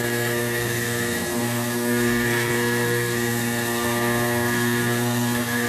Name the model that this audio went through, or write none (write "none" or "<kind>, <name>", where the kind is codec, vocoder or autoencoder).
codec, SNAC